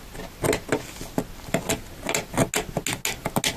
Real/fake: real